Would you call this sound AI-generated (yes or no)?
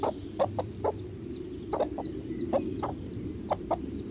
no